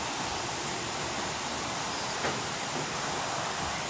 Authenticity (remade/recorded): recorded